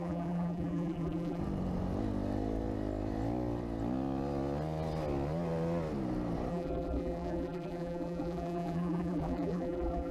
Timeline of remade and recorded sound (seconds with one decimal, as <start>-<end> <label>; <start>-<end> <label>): 0.0-1.4 remade; 1.4-6.5 recorded; 6.5-10.1 remade